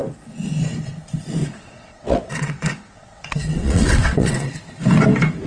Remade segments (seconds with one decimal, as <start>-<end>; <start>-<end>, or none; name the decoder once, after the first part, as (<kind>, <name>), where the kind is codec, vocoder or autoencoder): 1.4-4.5 (vocoder, WaveNeXt)